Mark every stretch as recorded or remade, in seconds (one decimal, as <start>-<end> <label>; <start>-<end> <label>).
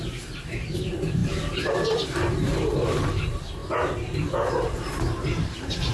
0.0-3.6 remade; 3.6-4.5 recorded; 4.5-5.9 remade